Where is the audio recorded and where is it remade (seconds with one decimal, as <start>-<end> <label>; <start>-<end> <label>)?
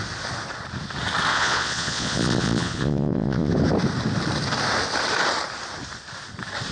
0.0-1.3 recorded; 1.3-3.5 remade; 3.5-6.7 recorded